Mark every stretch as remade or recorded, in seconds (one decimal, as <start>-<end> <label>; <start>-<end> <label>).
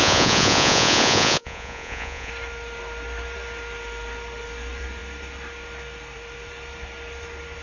0.0-2.3 remade; 2.3-7.6 recorded